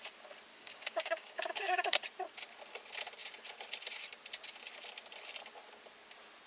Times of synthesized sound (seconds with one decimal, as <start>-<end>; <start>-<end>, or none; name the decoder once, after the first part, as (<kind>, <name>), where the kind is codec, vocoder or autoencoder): 0.5-2.0 (codec, DAC)